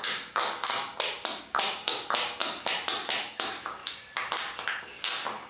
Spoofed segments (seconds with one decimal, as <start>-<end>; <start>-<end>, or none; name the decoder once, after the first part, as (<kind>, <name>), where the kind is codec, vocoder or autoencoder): 0.0-0.6 (codec, DAC); 1.4-2.4; 3.2-3.8; 4.8-5.5